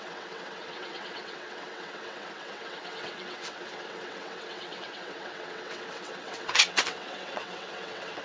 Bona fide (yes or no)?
no